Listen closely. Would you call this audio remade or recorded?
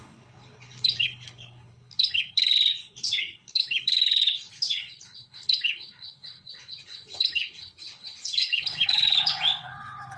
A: remade